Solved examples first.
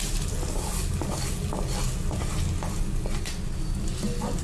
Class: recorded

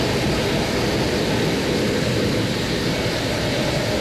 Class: recorded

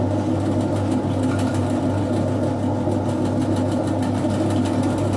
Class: recorded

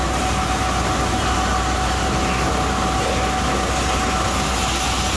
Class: recorded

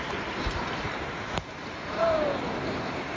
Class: remade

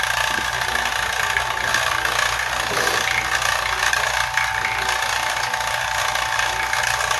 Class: recorded